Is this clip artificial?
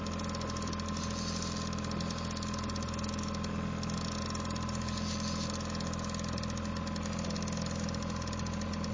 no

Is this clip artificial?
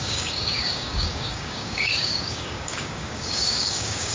yes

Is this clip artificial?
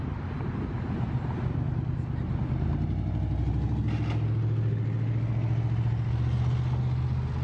no